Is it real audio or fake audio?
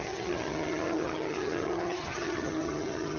fake